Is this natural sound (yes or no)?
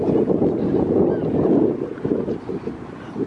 yes